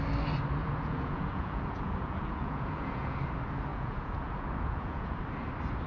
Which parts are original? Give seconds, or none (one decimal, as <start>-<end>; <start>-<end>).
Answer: 0.0-0.6; 3.2-3.7; 5.2-5.9